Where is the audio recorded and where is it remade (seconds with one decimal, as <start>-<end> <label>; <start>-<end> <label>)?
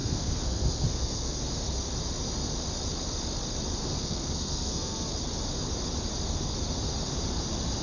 0.0-1.4 remade; 1.4-3.8 recorded; 3.8-5.1 remade; 5.1-7.8 recorded